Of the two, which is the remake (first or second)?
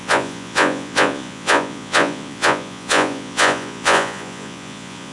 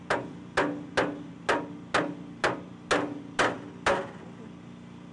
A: first